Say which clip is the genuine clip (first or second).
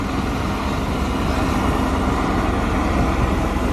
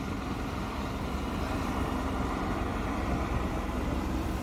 first